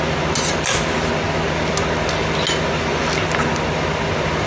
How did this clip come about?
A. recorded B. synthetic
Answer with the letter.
A